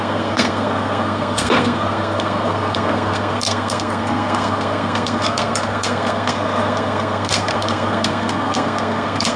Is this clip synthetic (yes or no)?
yes